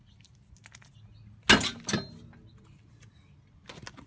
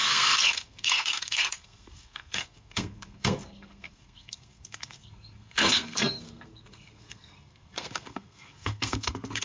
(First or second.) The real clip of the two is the first